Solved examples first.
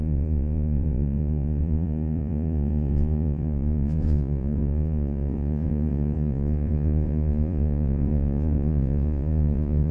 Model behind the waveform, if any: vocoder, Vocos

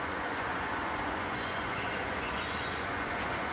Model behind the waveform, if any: vocoder, Vocos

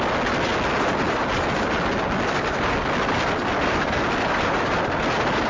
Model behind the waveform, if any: none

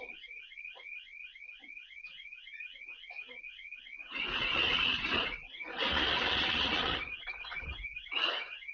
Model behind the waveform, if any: vocoder, Vocos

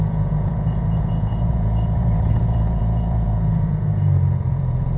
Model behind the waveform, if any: vocoder, Vocos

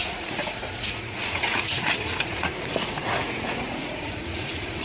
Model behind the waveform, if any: vocoder, Vocos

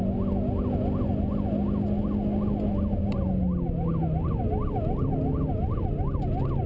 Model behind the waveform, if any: none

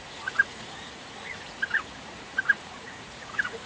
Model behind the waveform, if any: vocoder, Vocos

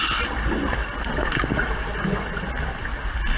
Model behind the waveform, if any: none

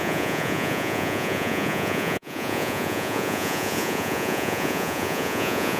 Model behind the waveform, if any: vocoder, Vocos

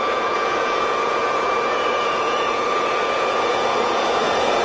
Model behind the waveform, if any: vocoder, Vocos